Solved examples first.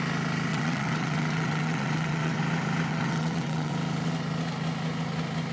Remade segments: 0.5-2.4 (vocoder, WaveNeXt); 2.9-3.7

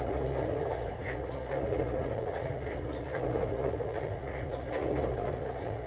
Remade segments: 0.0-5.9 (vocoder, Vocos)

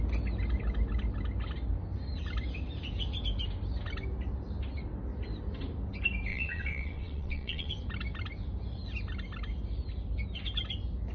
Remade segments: 6.3-7.7 (vocoder, WaveNeXt)

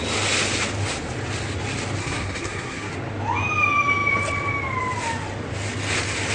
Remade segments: 2.0-2.9 (codec, SNAC)